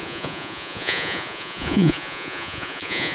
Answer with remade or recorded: remade